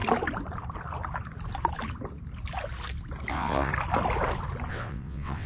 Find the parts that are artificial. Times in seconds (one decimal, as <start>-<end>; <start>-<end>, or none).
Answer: 3.3-3.7; 4.7-5.5